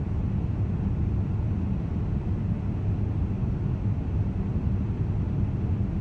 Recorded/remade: recorded